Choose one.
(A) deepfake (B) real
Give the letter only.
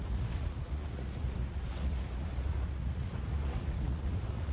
A